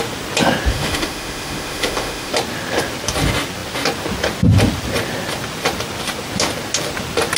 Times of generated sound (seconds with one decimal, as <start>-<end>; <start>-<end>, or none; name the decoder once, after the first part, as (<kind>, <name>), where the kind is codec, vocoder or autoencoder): 0.7-2.3 (autoencoder, DAC-VAE)